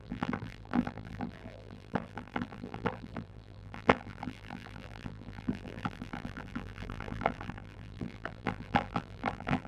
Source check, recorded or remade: remade